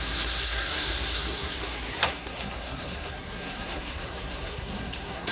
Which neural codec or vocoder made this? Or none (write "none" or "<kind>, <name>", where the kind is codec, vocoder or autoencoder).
codec, SNAC